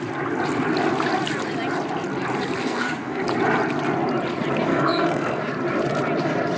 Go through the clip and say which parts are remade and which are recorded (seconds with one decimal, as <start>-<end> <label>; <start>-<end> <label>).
0.0-2.6 recorded; 2.6-3.2 remade; 3.2-4.7 recorded; 4.7-5.4 remade; 5.4-6.6 recorded